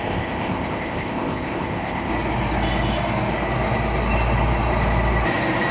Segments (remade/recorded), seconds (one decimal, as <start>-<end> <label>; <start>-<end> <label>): 0.0-2.1 remade; 2.1-5.7 recorded